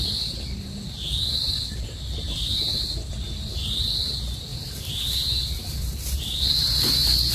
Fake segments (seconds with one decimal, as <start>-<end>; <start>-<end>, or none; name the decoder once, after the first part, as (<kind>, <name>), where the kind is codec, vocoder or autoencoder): none